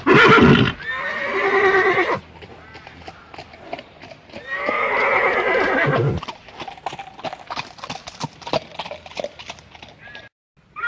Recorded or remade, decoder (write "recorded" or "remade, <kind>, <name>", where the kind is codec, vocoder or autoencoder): recorded